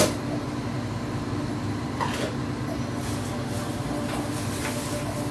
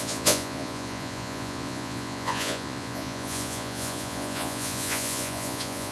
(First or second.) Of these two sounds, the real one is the first